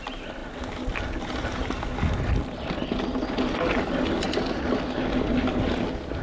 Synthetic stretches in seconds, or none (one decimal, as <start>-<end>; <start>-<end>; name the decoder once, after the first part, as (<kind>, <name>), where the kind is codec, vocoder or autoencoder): none